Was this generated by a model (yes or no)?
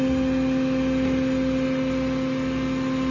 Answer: no